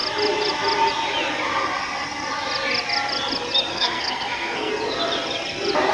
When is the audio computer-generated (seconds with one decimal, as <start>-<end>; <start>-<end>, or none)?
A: 3.7-4.7